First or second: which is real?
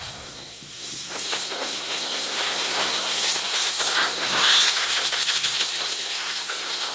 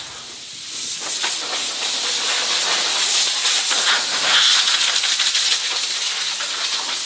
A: second